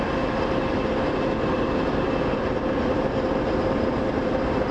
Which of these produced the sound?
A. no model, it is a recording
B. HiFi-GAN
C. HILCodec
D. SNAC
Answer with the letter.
A